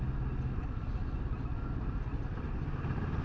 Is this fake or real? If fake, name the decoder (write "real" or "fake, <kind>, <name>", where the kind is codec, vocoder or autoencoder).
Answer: real